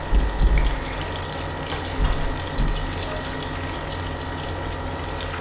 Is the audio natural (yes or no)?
yes